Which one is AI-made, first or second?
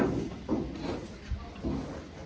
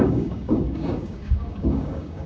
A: second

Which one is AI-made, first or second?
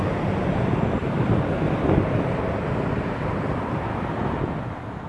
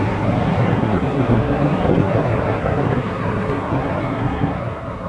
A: second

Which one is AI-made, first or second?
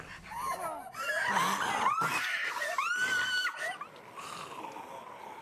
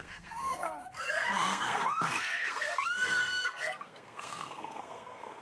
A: second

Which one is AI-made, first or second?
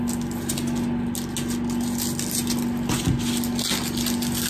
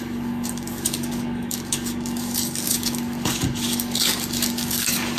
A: second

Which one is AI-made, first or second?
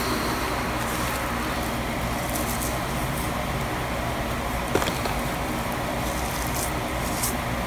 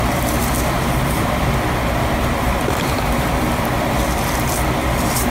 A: second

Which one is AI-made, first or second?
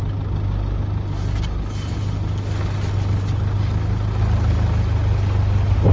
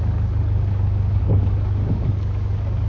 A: second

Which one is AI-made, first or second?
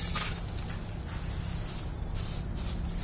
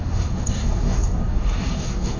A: second